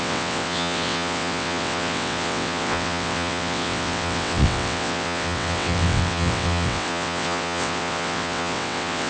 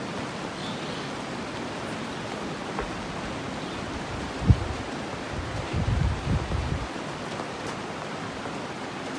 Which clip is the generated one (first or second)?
first